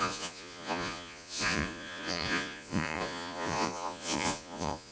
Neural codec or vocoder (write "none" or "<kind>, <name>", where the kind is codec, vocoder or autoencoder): vocoder, Vocos